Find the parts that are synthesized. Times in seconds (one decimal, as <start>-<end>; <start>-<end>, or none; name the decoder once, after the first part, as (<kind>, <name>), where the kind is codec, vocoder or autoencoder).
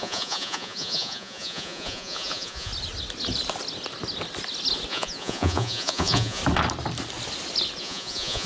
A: 0.0-2.7 (vocoder, Vocos); 4.9-6.4; 7.8-8.5